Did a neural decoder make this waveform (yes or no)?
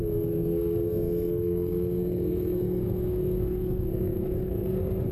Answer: yes